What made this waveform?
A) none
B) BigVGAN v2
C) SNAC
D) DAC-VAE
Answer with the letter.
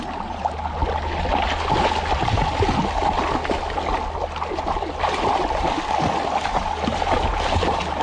A